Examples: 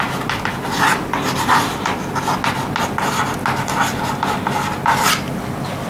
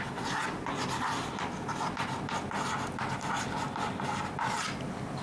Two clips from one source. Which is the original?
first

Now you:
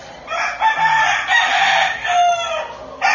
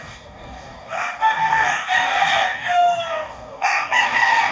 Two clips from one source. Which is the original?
first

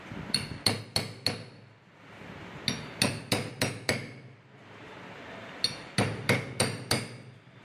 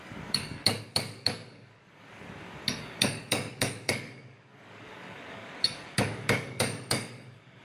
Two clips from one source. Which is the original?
first